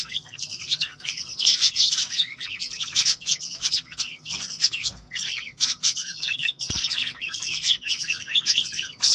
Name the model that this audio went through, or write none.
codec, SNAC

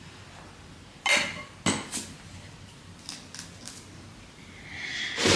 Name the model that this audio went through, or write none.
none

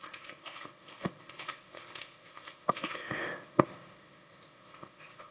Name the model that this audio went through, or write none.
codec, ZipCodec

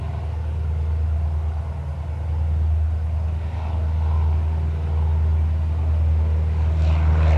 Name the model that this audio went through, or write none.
none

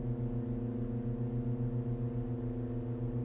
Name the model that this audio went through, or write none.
none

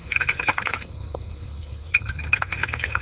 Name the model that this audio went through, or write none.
codec, SNAC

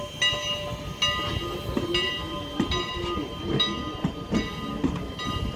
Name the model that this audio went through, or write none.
none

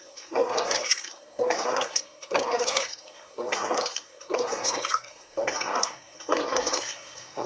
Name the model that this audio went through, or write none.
codec, SNAC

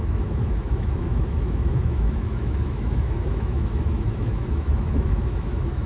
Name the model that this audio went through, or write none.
autoencoder, DAC-VAE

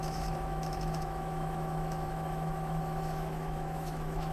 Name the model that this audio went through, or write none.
autoencoder, DAC-VAE